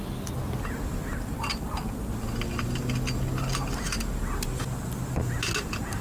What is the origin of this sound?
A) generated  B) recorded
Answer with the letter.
B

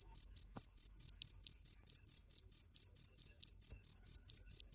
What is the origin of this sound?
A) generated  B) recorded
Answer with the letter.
A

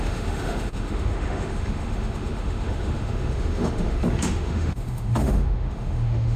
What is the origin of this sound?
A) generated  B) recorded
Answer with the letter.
A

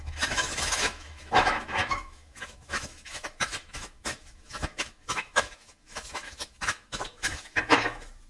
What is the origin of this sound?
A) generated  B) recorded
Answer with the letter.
A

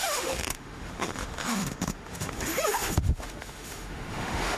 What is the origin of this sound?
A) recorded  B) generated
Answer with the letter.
B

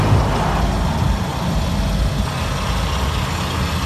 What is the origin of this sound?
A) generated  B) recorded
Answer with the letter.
B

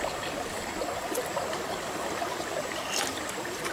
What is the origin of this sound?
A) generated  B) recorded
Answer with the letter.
B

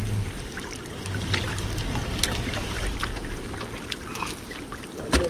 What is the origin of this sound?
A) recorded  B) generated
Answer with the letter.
A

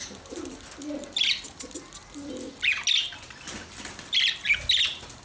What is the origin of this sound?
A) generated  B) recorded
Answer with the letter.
B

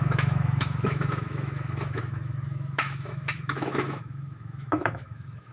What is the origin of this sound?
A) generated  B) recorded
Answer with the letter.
A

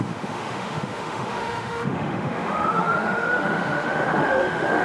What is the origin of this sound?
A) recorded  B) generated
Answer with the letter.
B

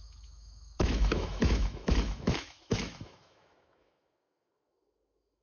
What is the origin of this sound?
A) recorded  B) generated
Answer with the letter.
B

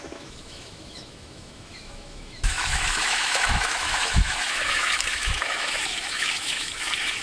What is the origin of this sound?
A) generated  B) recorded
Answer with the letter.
A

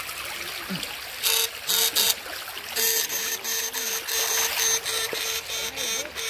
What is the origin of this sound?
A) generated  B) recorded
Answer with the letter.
B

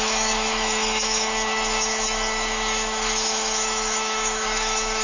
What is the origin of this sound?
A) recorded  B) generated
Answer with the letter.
B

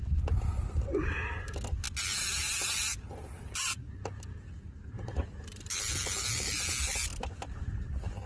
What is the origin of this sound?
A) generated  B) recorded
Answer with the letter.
B